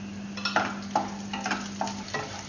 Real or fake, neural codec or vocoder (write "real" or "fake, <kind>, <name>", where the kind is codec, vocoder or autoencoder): real